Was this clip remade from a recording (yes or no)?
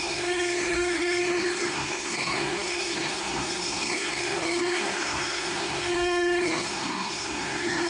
yes